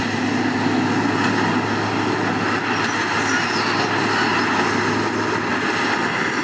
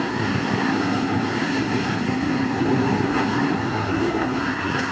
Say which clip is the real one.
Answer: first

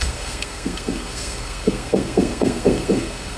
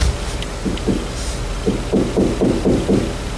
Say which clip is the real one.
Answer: second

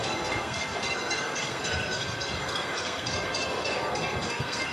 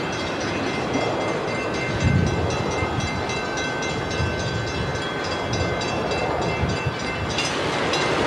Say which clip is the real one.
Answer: second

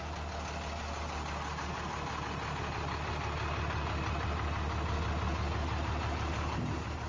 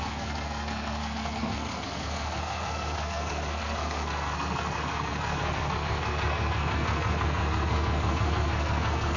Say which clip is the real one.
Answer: first